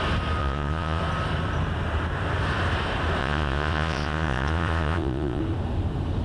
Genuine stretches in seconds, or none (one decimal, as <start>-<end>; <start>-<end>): 0.0-0.4; 1.0-3.2; 5.4-6.2